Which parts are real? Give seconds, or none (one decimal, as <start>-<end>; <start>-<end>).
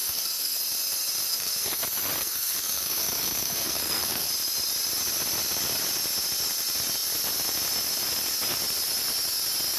0.6-1.3; 1.8-2.2; 4.3-9.8